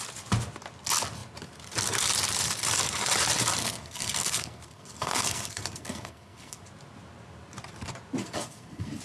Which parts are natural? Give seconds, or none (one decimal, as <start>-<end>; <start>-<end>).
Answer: 0.0-3.6; 6.6-8.2